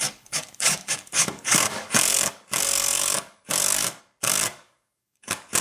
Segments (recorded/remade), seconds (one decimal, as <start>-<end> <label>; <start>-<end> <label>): 0.0-5.6 remade